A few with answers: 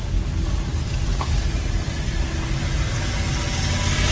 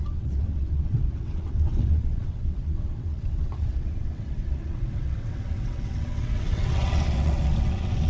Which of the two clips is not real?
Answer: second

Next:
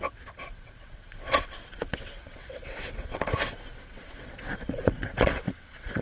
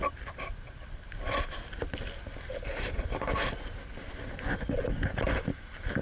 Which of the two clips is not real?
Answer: first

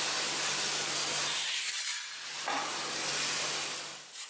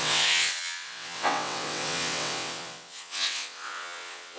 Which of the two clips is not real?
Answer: second